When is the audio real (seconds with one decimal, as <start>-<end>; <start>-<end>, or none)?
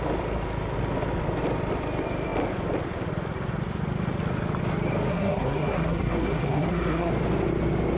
0.0-5.1; 7.1-8.0